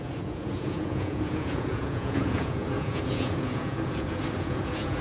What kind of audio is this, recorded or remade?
remade